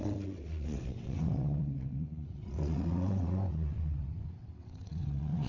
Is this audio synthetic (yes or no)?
yes